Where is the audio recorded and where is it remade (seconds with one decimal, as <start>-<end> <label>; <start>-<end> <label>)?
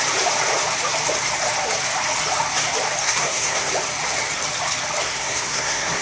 0.0-3.0 recorded; 3.0-3.7 remade; 3.7-5.0 recorded; 5.0-6.0 remade